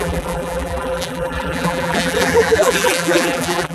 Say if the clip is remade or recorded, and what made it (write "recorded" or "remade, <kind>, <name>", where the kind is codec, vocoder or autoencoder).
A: remade, vocoder, BigVGAN v2